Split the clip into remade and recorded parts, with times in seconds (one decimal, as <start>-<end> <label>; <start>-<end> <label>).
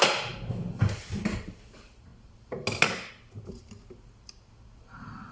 0.0-5.3 recorded